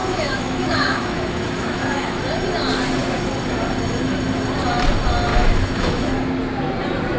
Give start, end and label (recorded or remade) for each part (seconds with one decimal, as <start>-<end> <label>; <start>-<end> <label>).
0.0-2.2 remade; 2.2-5.3 recorded; 5.3-6.1 remade; 6.1-7.2 recorded